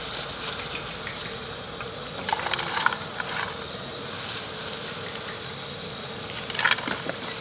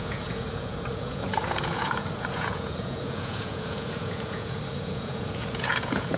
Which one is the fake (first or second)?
second